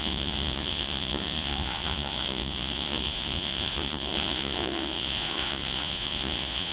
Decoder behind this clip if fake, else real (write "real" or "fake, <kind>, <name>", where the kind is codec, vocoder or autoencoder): fake, vocoder, Vocos